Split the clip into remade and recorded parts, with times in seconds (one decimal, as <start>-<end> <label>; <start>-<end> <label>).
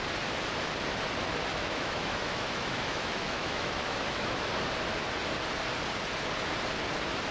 0.0-1.5 recorded; 1.5-4.5 remade; 4.5-7.3 recorded